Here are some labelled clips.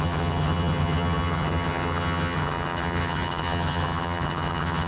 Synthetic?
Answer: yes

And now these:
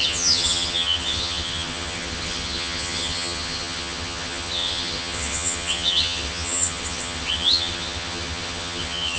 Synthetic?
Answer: yes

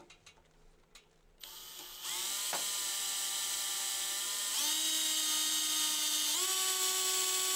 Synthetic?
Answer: no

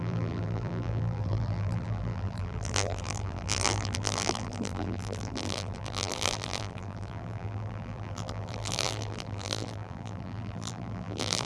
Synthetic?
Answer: yes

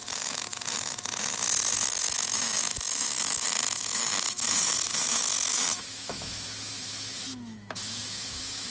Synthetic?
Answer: yes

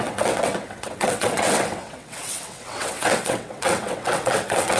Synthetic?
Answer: yes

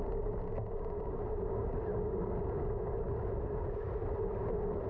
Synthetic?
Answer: no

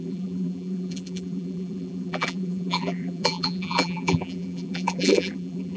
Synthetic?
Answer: yes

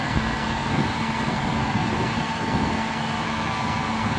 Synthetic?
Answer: yes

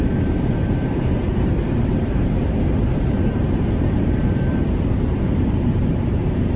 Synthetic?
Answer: yes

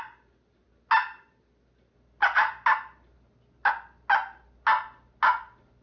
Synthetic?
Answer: no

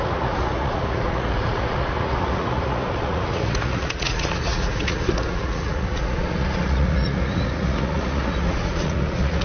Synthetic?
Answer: yes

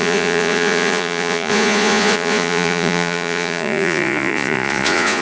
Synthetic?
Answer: yes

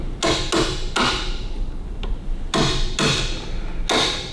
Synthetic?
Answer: no